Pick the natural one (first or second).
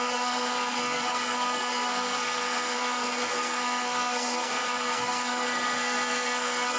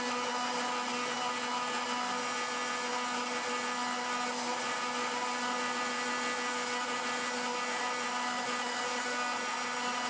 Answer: second